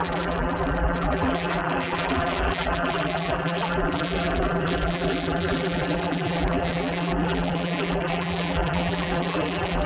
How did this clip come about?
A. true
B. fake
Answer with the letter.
B